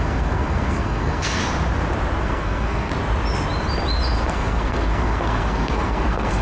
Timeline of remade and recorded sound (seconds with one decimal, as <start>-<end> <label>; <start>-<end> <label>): 0.0-1.4 remade; 1.4-2.2 recorded; 2.2-2.9 remade; 2.9-4.3 recorded; 4.3-6.4 remade